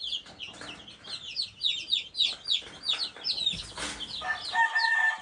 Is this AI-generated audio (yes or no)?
no